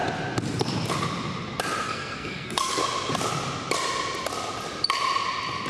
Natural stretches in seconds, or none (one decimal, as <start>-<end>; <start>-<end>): 0.0-1.8; 2.8-5.7